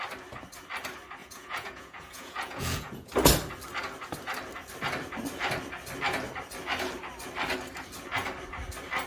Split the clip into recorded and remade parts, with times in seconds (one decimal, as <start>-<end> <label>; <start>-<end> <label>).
0.0-1.2 recorded; 1.2-3.1 remade; 3.1-9.1 recorded